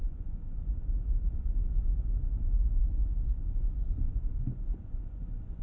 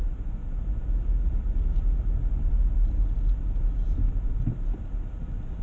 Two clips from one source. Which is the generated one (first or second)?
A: first